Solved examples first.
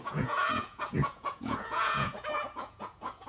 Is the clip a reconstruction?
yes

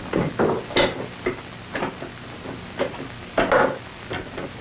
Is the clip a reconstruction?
no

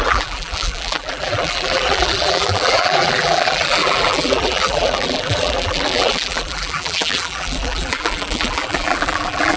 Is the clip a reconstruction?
yes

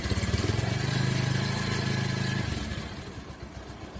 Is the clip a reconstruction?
no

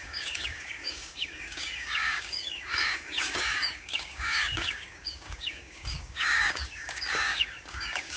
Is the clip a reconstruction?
yes